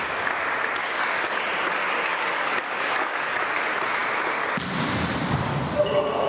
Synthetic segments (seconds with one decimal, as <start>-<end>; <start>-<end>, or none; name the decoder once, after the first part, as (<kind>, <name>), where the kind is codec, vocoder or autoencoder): 0.8-1.4 (codec, DAC); 2.1-3.6